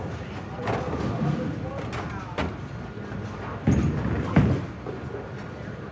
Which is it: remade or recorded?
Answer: recorded